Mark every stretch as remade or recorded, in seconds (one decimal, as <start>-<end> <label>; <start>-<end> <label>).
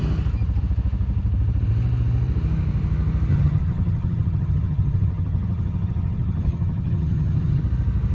0.0-3.3 recorded; 3.3-7.6 remade; 7.6-8.1 recorded